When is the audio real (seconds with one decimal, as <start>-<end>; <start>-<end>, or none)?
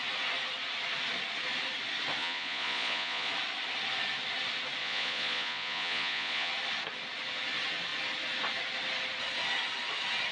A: 0.0-2.2; 3.3-4.8; 6.5-10.3